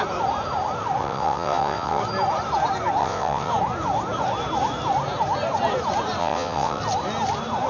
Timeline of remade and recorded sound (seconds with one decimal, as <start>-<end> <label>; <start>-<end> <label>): 0.0-1.0 recorded; 1.0-2.0 remade; 2.0-3.0 recorded; 3.0-3.5 remade; 3.5-6.2 recorded; 6.2-6.8 remade; 6.8-7.7 recorded